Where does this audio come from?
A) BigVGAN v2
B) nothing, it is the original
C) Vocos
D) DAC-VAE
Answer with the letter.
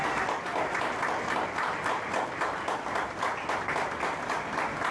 B